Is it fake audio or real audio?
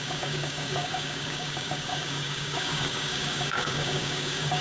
fake